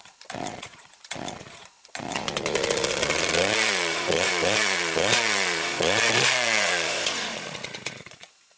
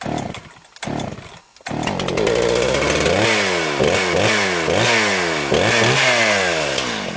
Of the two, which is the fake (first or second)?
first